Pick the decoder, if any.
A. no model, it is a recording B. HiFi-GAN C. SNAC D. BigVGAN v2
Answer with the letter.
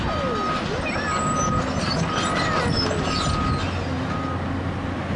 A